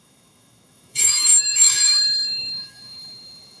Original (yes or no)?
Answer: no